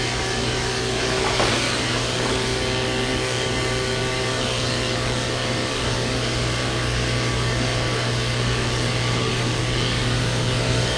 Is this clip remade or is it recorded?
remade